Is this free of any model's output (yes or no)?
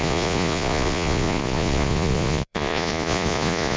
no